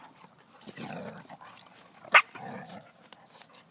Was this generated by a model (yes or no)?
no